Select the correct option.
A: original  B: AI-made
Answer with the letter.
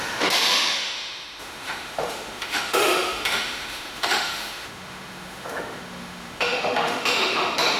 B